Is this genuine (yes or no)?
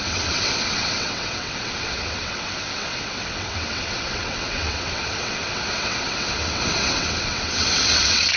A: no